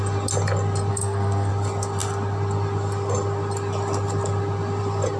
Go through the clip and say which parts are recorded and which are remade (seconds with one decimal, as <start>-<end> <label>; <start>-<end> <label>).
0.0-0.9 recorded; 0.9-1.5 remade; 1.5-5.2 recorded